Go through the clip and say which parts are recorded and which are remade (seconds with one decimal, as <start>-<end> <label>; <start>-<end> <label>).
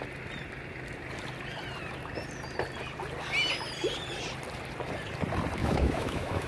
0.0-5.6 recorded; 5.6-6.5 remade